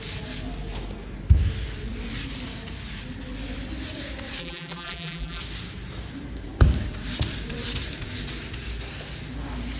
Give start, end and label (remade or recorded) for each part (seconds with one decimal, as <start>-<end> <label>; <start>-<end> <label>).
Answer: 0.0-4.4 recorded; 4.4-5.4 remade; 5.4-9.8 recorded